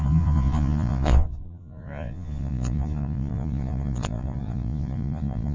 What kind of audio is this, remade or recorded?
remade